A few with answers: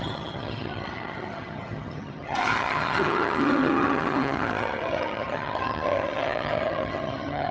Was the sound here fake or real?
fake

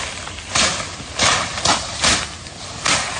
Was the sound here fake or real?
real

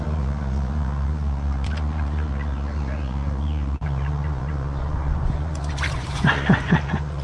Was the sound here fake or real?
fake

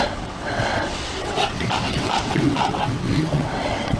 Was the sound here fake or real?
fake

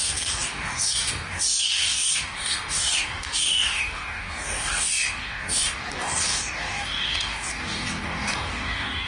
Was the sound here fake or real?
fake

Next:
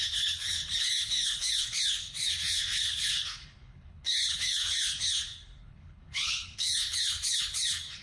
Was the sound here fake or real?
fake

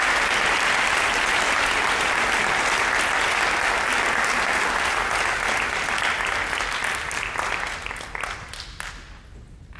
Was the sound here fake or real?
real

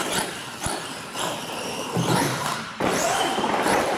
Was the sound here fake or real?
fake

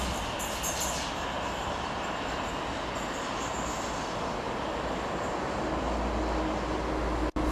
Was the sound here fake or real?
real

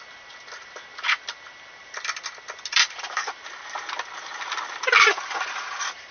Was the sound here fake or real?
real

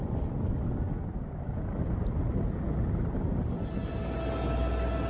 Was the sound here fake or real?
real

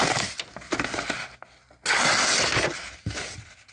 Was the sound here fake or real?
real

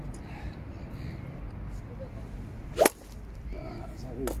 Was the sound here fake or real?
real